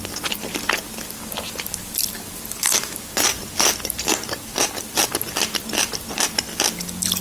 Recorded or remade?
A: recorded